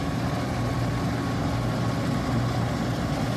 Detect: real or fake real